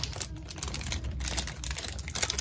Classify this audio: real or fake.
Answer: real